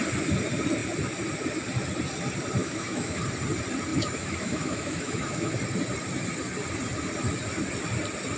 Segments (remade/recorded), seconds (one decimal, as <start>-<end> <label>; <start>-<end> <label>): 0.0-2.6 recorded; 2.6-3.2 remade; 3.2-3.9 recorded; 3.9-5.5 remade; 5.5-8.4 recorded